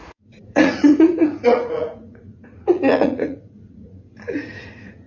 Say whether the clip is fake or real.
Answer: fake